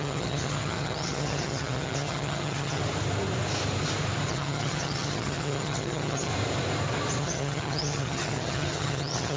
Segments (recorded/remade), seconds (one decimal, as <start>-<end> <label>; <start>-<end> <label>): 0.0-2.8 remade; 2.8-4.3 recorded; 4.3-6.3 remade; 6.3-7.2 recorded; 7.2-9.4 remade